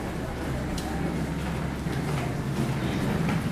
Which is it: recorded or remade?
recorded